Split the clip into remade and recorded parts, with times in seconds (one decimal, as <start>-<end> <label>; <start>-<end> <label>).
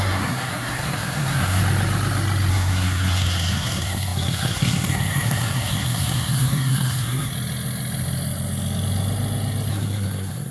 0.0-1.6 remade; 1.6-2.5 recorded; 2.5-7.3 remade; 7.3-9.7 recorded; 9.7-10.5 remade